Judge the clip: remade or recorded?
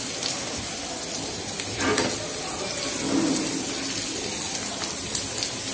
recorded